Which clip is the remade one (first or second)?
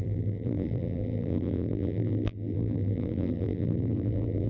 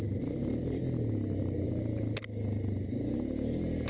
first